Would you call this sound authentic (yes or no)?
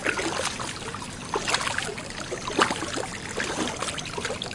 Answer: yes